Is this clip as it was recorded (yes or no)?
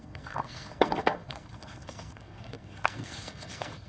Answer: no